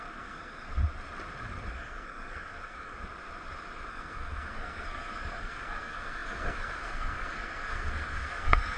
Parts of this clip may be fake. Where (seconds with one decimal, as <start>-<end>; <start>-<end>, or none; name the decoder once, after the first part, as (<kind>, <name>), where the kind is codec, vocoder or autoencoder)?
0.0-0.7 (codec, SNAC); 1.7-2.9; 3.9-8.8